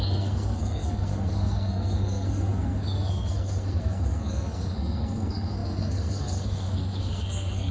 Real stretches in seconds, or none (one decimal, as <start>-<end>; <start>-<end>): none